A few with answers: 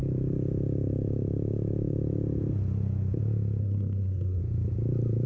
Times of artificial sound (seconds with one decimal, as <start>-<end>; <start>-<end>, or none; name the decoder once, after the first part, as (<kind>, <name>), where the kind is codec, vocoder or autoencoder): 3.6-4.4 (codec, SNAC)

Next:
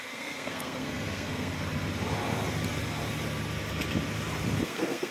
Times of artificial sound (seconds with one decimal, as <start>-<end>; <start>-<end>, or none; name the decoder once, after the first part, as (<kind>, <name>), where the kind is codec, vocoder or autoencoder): 0.0-1.5 (codec, SNAC); 4.6-5.1

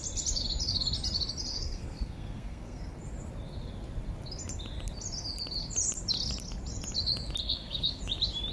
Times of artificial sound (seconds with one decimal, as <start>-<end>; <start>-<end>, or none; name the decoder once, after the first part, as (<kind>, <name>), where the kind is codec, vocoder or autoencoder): 1.5-2.8 (codec, SNAC); 7.4-8.0